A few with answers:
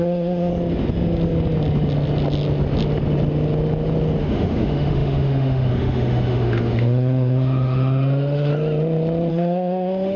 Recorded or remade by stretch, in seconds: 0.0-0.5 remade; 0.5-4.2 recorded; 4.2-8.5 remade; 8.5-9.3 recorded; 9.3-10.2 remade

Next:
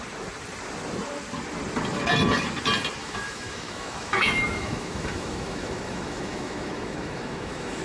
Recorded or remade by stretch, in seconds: 0.0-3.0 recorded; 3.0-7.8 remade

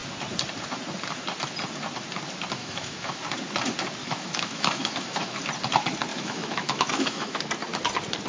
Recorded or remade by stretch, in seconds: 0.0-2.6 recorded; 2.6-3.2 remade; 3.2-4.0 recorded; 4.0-5.4 remade; 5.4-6.1 recorded; 6.1-7.4 remade; 7.4-8.3 recorded

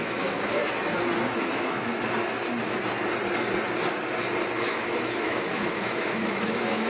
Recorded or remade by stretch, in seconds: 0.0-0.6 remade; 0.6-1.4 recorded; 1.4-1.9 remade; 1.9-4.6 recorded; 4.6-6.9 remade

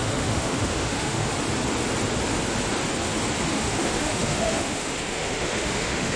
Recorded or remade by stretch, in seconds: 0.0-1.3 remade; 1.3-3.5 recorded; 3.5-6.2 remade

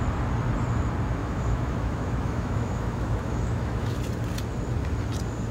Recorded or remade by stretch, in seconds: 0.0-1.2 recorded; 1.2-4.0 remade; 4.0-5.5 recorded

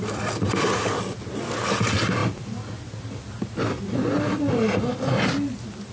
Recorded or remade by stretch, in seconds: 0.0-5.9 recorded